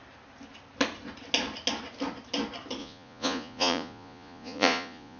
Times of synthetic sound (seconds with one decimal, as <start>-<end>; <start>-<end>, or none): 2.8-5.2